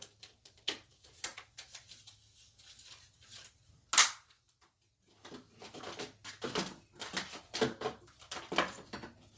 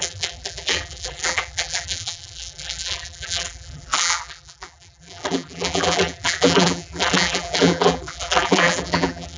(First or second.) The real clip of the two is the first